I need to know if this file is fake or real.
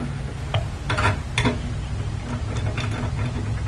real